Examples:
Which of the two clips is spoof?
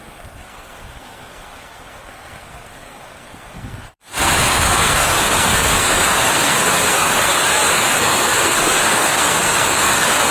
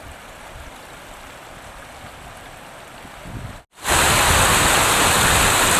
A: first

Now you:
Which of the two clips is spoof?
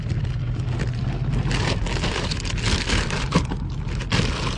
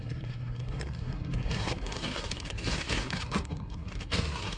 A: second